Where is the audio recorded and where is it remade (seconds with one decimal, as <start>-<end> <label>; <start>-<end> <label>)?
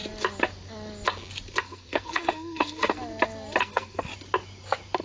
0.0-1.6 recorded; 1.6-3.0 remade; 3.0-3.6 recorded; 3.6-4.1 remade; 4.1-5.0 recorded